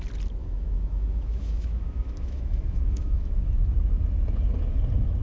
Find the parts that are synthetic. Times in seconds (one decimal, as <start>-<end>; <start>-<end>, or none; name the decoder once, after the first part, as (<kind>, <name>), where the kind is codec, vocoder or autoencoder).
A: 0.4-3.5 (autoencoder, DAC-VAE)